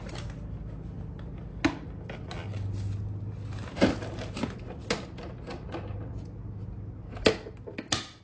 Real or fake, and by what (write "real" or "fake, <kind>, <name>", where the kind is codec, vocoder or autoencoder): real